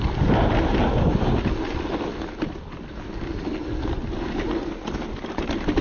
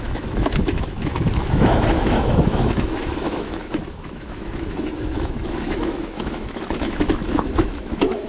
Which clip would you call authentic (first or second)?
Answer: first